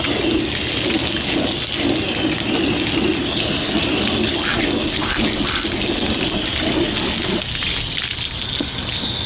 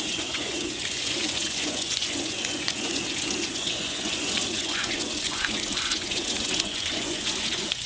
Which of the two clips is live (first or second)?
first